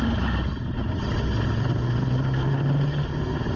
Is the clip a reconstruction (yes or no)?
no